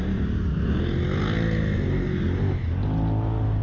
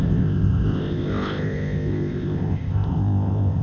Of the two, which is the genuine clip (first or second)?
first